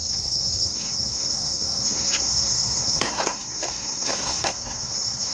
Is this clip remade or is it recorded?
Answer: remade